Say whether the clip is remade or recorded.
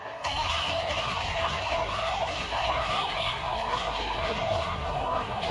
remade